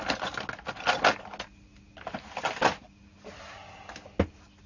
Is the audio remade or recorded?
recorded